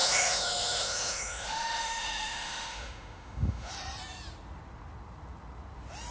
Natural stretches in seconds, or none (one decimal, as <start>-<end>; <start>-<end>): 3.7-6.1